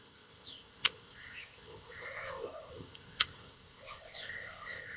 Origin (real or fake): fake